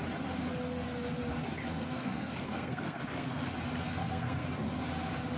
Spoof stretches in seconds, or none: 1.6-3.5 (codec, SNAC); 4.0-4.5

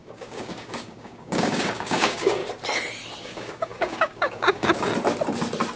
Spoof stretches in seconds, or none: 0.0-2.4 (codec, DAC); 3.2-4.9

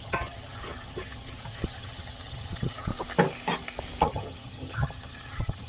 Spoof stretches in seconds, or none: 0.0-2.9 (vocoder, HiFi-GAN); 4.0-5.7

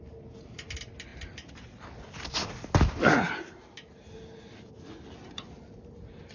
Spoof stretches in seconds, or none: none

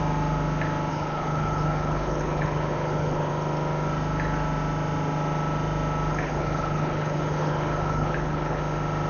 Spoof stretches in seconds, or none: 0.9-3.3 (codec, HILCodec); 6.1-8.6

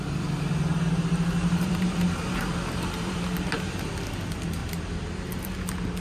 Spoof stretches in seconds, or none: 0.7-3.9 (vocoder, BigVGAN v2); 4.6-5.2